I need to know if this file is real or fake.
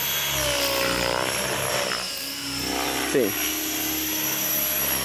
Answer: real